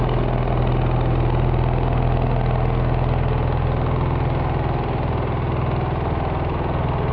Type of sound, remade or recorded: recorded